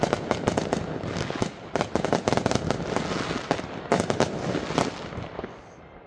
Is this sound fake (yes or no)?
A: no